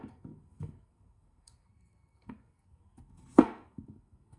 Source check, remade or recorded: remade